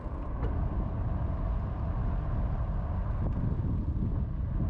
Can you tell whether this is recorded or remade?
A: recorded